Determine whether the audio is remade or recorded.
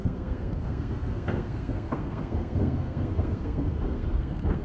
remade